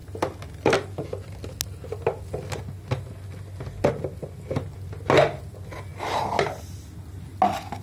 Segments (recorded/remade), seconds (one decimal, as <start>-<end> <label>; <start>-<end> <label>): 0.0-7.8 recorded